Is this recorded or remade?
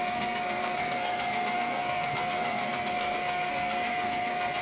remade